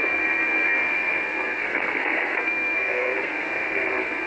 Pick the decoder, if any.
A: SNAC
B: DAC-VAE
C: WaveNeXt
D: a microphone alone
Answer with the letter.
A